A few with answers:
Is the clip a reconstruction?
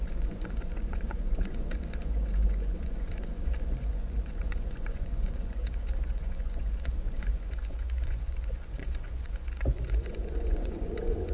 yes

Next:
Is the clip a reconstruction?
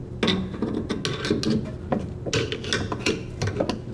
no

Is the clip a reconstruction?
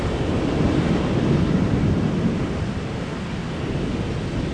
no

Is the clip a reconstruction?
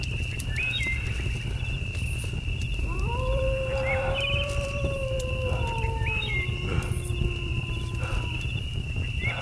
yes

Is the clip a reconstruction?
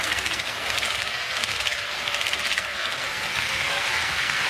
yes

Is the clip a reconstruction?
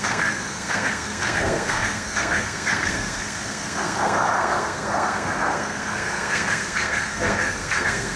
yes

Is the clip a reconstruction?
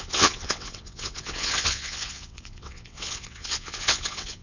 yes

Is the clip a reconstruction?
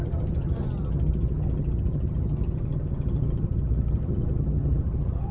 yes